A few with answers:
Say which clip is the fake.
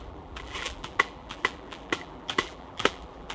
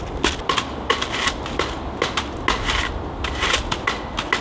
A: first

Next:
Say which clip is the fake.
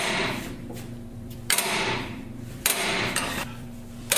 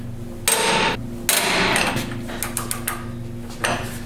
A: first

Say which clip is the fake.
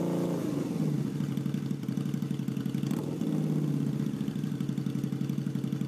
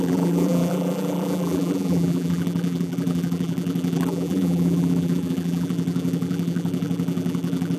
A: second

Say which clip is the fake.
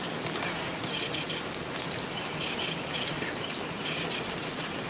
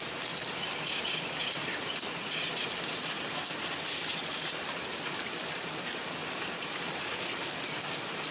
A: second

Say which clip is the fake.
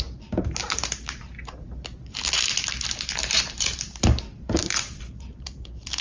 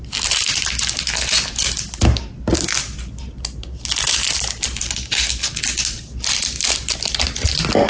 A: first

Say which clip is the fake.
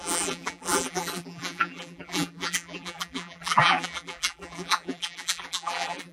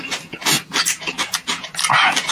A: first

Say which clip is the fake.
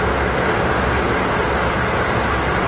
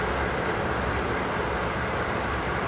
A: second